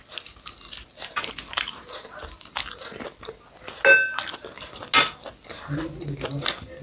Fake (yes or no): no